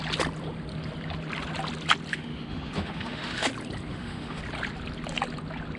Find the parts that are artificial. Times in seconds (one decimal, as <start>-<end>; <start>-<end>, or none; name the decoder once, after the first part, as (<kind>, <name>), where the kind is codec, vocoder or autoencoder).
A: 2.1-3.5 (autoencoder, DAC-VAE); 3.9-4.4